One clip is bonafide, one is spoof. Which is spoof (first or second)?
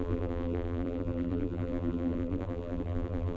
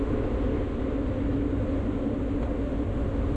first